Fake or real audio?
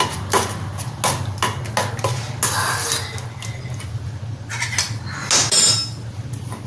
real